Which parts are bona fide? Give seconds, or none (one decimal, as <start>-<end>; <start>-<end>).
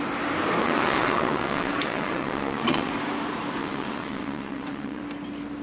0.0-0.6; 2.9-3.6; 5.0-5.6